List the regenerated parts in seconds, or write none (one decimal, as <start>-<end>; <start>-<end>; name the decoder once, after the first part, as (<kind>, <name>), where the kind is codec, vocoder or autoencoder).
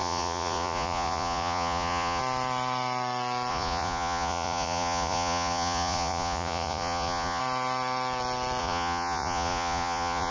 0.0-2.2 (vocoder, Vocos); 3.5-7.4; 8.6-10.3